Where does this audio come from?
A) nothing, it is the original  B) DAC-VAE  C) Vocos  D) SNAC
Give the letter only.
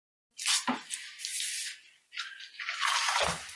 A